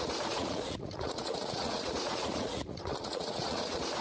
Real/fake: fake